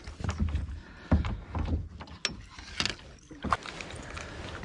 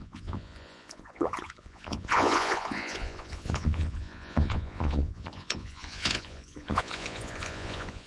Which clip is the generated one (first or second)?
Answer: second